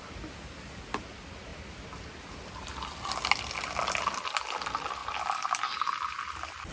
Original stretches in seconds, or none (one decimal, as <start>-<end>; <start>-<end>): 0.0-6.7